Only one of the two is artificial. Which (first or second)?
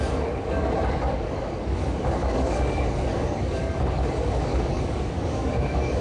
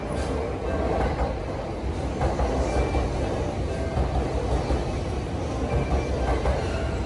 first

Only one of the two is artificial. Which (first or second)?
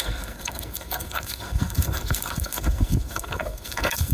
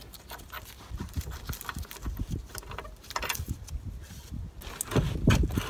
first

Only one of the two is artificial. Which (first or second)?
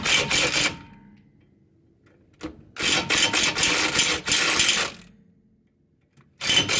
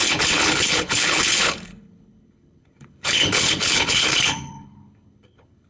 second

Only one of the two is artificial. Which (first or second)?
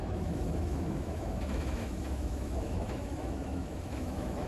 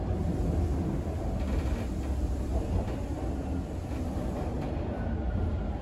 first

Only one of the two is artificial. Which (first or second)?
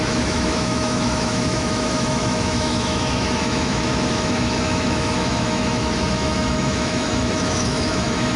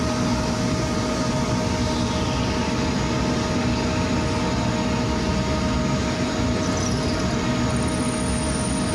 first